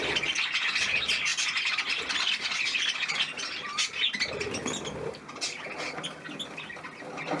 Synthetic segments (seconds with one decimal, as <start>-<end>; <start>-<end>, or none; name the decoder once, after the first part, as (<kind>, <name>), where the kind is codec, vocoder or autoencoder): none